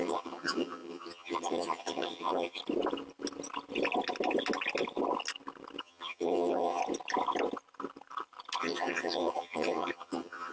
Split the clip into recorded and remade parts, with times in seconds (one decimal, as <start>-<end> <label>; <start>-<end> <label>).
0.0-2.6 remade; 2.6-5.8 recorded; 5.8-6.8 remade; 6.8-8.6 recorded; 8.6-10.5 remade